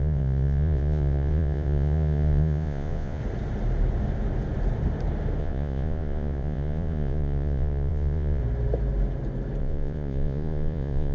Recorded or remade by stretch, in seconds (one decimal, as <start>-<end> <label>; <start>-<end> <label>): 0.0-3.2 remade; 3.2-5.4 recorded; 5.4-8.4 remade; 8.4-9.6 recorded; 9.6-11.1 remade